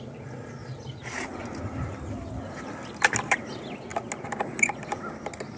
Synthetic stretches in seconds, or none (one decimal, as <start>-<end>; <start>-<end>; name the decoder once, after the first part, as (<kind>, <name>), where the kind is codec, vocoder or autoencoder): none